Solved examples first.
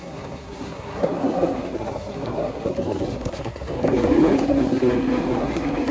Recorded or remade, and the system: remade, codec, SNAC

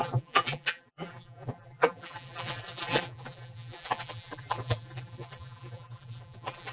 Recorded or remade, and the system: remade, vocoder, BigVGAN v2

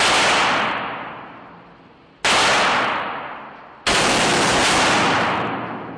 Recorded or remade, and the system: recorded